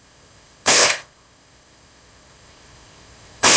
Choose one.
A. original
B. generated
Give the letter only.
B